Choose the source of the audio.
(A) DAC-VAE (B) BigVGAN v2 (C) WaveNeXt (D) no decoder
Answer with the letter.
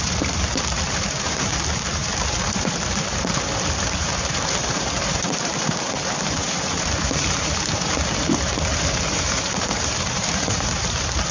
B